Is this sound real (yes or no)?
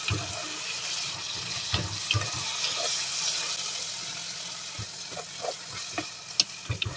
yes